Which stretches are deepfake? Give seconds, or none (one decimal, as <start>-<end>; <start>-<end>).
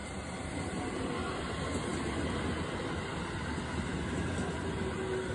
0.0-0.6